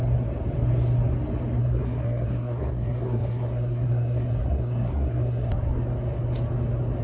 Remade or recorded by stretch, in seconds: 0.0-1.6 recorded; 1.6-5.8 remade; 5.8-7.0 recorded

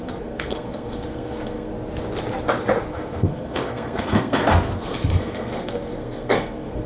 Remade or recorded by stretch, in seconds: 0.0-1.7 remade; 1.7-2.9 recorded; 2.9-6.9 remade

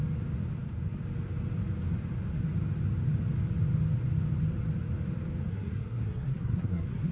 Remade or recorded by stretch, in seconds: 0.0-5.5 recorded; 5.5-7.1 remade

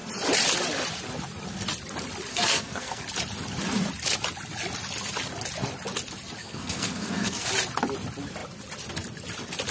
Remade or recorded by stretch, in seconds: 0.0-2.3 recorded; 2.3-3.0 remade; 3.0-6.4 recorded; 6.4-7.5 remade; 7.5-9.7 recorded

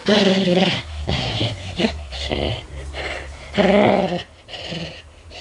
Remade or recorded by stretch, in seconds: 0.0-2.3 remade; 2.3-5.4 recorded